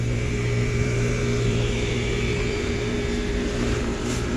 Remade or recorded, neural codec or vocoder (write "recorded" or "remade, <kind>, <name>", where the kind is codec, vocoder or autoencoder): remade, vocoder, BigVGAN v2